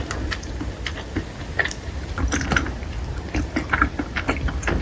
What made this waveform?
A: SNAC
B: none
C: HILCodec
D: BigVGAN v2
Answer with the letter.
B